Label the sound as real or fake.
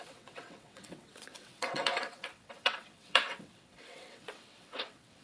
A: fake